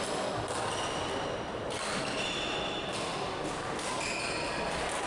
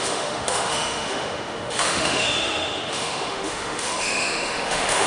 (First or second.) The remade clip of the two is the second